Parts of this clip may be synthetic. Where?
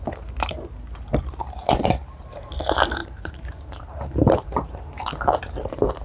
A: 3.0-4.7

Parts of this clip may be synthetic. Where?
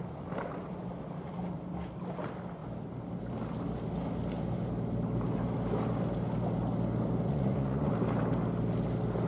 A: 7.3-7.9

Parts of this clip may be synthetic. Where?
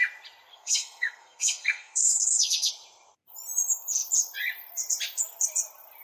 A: 0.5-2.7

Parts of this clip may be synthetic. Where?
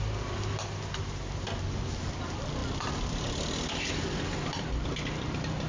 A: none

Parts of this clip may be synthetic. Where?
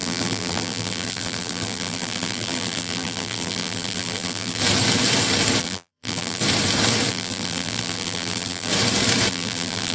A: 0.0-4.6; 5.6-6.4; 7.1-8.7; 9.3-9.9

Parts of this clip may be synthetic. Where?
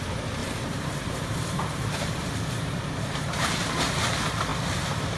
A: 0.4-3.5